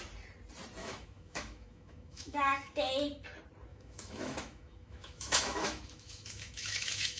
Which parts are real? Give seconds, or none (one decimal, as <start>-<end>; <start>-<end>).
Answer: 0.0-0.8; 2.9-3.7